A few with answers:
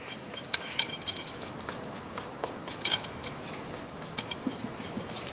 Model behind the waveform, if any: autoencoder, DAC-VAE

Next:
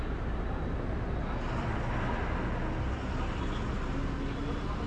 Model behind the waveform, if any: none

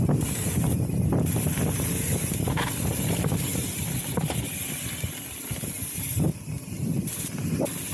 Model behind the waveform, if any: none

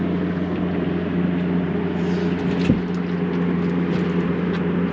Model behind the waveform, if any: none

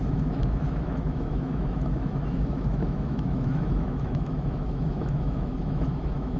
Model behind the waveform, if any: autoencoder, DAC-VAE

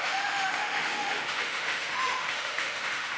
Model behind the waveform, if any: autoencoder, DAC-VAE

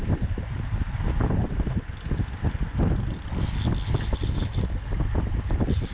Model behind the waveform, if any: none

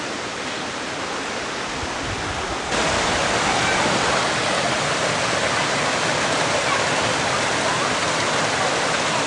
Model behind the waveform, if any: none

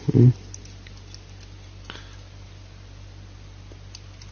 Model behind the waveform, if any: none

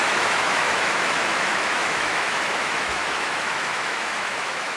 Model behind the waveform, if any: autoencoder, DAC-VAE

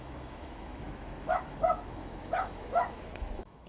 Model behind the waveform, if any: autoencoder, DAC-VAE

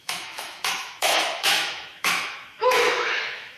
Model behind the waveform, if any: autoencoder, DAC-VAE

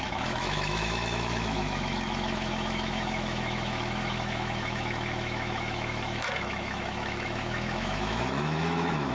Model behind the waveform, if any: autoencoder, DAC-VAE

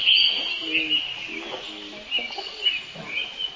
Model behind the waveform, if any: none